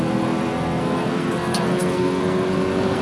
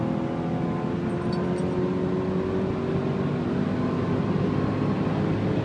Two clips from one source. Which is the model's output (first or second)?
first